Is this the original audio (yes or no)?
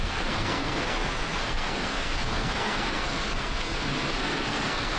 no